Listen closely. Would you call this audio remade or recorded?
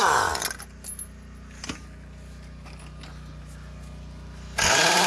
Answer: recorded